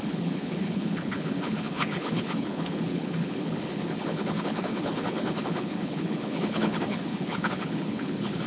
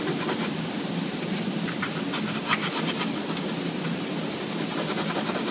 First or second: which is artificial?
first